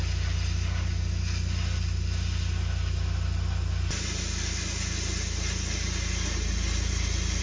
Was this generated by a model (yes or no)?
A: no